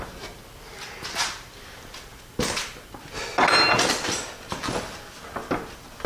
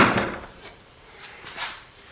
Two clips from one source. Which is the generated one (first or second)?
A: second